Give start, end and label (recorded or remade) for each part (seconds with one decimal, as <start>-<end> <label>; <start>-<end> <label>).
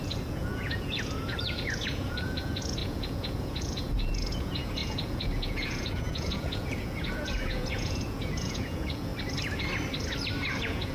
0.0-9.1 remade; 9.1-10.5 recorded; 10.5-10.9 remade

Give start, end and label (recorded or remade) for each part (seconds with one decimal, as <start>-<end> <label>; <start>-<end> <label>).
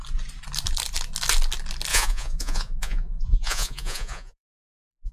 0.0-1.9 recorded; 1.9-5.1 remade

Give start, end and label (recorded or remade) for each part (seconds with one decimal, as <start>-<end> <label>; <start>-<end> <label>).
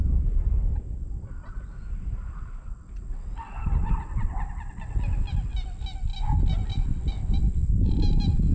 0.0-8.5 recorded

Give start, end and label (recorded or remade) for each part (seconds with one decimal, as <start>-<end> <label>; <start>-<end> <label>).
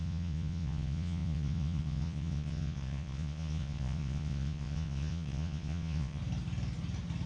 0.0-6.2 remade; 6.2-7.3 recorded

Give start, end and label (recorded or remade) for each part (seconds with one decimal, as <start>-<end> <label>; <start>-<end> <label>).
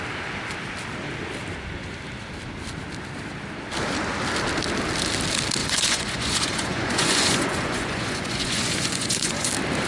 0.0-5.6 recorded; 5.6-9.5 remade; 9.5-9.9 recorded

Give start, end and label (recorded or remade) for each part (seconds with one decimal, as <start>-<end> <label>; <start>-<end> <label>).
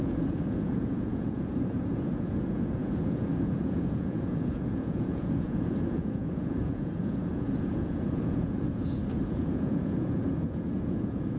0.0-11.4 remade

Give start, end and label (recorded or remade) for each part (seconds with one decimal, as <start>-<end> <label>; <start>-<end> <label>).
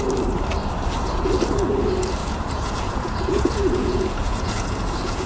0.0-2.2 recorded; 2.2-5.3 remade